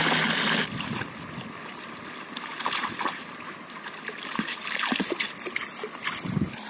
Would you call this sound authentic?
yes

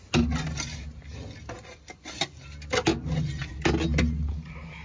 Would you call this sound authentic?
yes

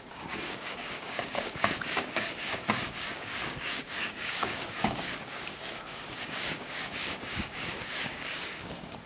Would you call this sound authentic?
no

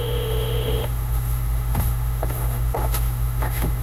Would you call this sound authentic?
no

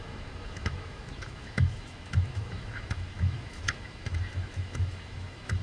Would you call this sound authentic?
no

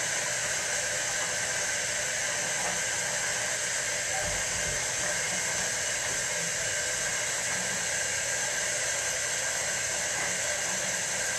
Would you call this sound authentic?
yes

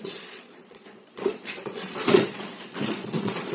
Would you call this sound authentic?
no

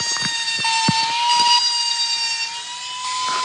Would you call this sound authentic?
yes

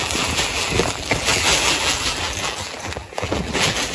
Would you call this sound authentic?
no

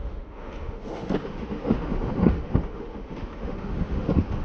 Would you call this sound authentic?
no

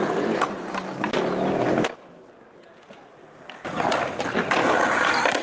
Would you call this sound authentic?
yes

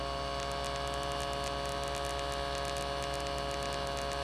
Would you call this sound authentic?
yes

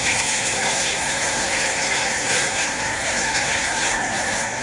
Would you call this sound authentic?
no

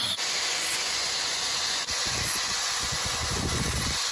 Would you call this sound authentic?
no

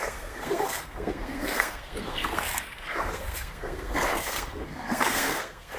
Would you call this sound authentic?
no